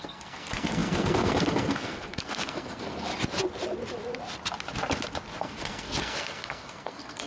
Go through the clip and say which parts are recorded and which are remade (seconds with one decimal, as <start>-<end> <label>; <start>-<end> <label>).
0.0-3.1 remade; 3.1-5.4 recorded; 5.4-7.3 remade